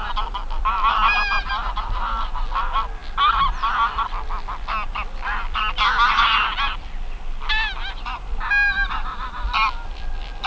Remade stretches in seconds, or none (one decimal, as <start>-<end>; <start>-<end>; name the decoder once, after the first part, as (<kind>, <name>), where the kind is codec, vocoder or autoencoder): none

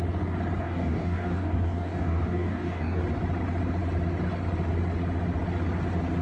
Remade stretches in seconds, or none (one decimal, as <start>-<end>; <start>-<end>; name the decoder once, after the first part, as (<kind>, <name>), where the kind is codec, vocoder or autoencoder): 0.6-3.0 (codec, DAC)

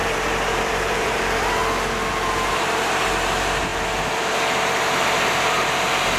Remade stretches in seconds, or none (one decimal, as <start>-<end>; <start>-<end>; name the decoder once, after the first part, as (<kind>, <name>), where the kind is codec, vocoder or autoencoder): 0.0-1.6 (vocoder, BigVGAN v2); 2.5-6.2

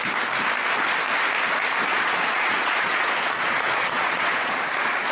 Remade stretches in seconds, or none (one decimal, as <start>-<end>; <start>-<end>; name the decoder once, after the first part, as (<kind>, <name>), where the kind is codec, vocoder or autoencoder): 1.9-4.6 (vocoder, Vocos)

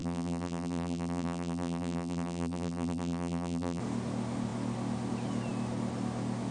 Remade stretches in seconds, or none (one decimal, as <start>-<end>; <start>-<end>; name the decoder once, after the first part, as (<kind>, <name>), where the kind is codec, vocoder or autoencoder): 0.0-3.8 (vocoder, BigVGAN v2)